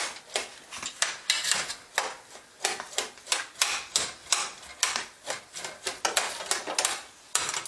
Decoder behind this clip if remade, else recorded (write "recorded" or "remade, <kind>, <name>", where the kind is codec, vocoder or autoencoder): recorded